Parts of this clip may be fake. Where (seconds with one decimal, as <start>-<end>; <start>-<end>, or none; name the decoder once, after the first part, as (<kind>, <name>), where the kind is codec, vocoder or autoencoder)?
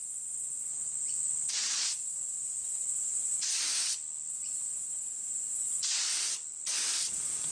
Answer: 0.0-0.7 (vocoder, Vocos); 1.5-3.5; 4.3-6.1; 7.1-7.5